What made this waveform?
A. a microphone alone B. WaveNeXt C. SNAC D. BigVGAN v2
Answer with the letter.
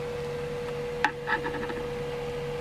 A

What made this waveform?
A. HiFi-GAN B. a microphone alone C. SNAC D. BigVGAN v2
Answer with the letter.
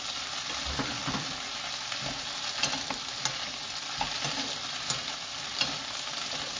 B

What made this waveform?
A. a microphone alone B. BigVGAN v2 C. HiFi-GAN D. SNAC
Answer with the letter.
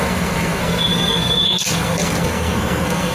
D